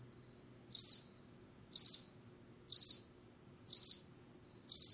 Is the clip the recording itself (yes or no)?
yes